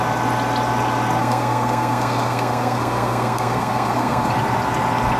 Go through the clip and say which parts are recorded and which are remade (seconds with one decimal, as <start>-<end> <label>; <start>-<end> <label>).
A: 0.0-1.2 recorded; 1.2-4.3 remade; 4.3-5.2 recorded